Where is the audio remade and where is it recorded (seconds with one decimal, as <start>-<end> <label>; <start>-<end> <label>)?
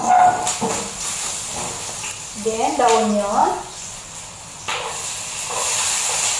0.0-3.4 recorded; 3.4-4.0 remade; 4.0-6.4 recorded